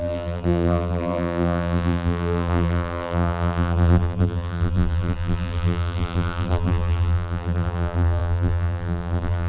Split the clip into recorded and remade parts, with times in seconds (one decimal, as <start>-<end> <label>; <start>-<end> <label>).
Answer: 0.0-9.5 remade